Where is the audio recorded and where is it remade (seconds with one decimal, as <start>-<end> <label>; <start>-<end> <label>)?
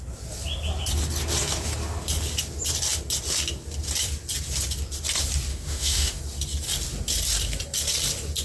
0.0-5.5 recorded; 5.5-6.2 remade; 6.2-8.4 recorded